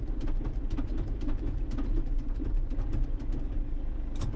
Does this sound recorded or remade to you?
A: recorded